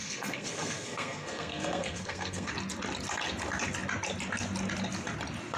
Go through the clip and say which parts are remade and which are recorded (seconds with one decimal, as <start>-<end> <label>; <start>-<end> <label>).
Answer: 0.0-2.5 remade; 2.5-5.6 recorded